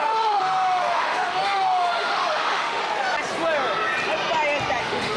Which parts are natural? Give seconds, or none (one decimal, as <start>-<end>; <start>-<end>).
2.8-4.8